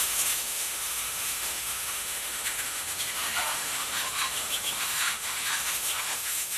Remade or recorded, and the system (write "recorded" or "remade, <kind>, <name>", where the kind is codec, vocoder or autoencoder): remade, autoencoder, DAC-VAE